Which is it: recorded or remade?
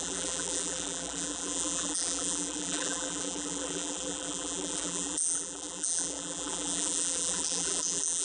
remade